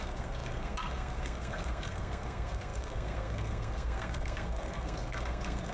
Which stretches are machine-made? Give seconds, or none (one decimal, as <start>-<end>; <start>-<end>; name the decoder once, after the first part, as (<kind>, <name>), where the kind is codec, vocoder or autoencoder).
0.0-5.7 (codec, SNAC)